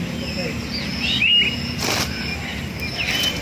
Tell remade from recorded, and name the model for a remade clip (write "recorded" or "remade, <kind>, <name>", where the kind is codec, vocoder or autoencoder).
recorded